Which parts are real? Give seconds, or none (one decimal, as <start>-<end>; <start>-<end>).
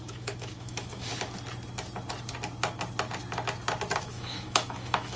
1.1-4.0